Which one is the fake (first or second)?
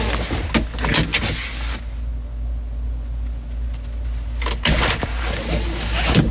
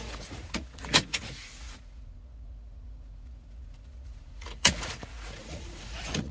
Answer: second